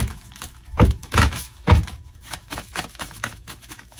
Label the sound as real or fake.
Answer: fake